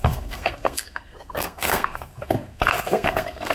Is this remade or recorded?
remade